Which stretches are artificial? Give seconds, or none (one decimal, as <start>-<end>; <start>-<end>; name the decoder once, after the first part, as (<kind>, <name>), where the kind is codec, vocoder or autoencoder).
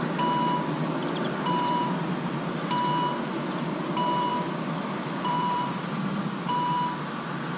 1.0-2.1 (vocoder, BigVGAN v2); 4.3-6.2